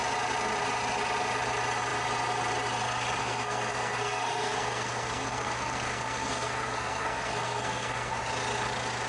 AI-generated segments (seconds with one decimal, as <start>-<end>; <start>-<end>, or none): 3.2-8.2